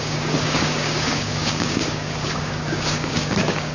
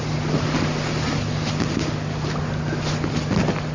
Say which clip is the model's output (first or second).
first